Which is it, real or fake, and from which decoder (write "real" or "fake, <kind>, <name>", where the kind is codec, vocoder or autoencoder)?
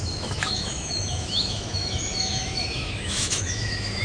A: fake, autoencoder, DAC-VAE